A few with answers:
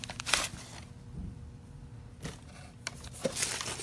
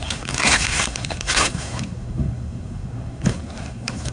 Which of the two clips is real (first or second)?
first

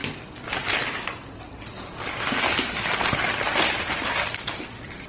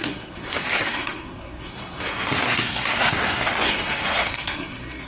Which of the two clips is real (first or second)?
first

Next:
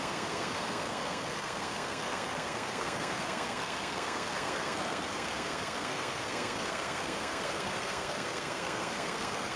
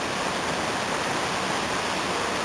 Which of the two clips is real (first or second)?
second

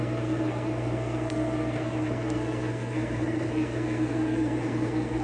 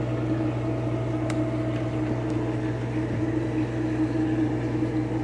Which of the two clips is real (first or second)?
second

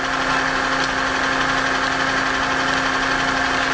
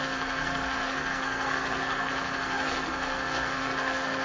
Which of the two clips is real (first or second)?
first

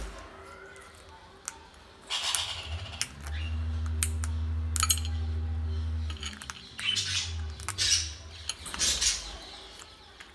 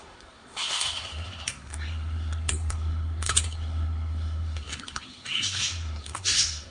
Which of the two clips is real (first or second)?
first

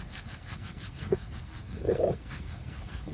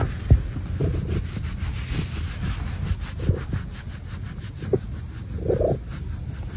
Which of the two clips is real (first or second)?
second